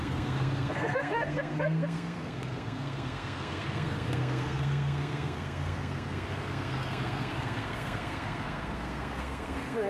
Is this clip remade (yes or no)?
yes